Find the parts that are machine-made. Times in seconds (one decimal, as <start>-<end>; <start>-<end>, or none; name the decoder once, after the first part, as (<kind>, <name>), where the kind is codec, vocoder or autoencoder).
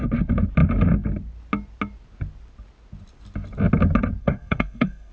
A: 4.2-5.1 (codec, SNAC)